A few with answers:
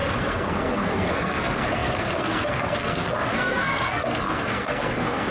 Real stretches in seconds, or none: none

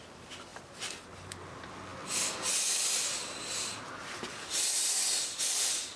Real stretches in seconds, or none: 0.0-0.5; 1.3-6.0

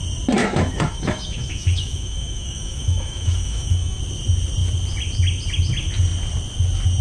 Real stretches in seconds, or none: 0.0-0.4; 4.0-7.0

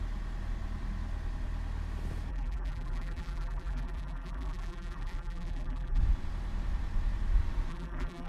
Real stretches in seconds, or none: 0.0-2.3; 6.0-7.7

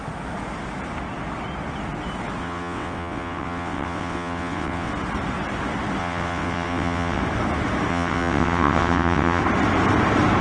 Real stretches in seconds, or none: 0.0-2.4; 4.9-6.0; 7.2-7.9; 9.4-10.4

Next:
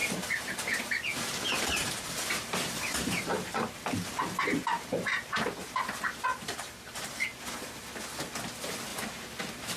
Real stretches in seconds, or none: 0.5-1.1; 5.8-6.3; 7.4-9.8

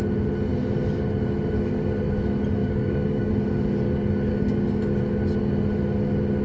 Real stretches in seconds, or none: 0.0-2.6; 3.3-4.3; 5.0-6.4